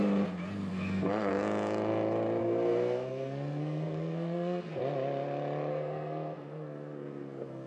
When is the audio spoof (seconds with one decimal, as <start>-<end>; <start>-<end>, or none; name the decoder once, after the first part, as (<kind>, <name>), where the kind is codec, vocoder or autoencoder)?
0.7-1.3 (codec, SNAC); 2.4-4.8; 5.7-7.7